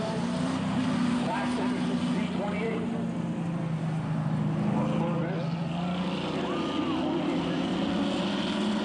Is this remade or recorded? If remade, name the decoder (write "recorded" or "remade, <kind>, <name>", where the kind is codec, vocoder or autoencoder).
recorded